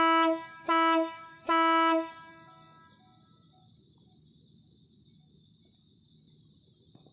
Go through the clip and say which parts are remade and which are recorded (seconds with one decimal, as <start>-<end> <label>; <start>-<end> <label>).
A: 0.0-0.5 recorded; 0.5-2.1 remade; 2.1-7.1 recorded